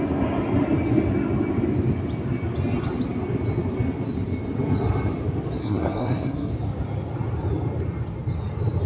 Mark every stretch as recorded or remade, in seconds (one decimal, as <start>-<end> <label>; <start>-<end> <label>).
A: 0.0-5.6 recorded; 5.6-6.5 remade; 6.5-8.9 recorded